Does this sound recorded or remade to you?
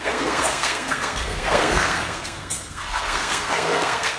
remade